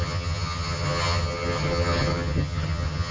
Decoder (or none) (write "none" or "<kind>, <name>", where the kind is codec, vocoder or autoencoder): vocoder, HiFi-GAN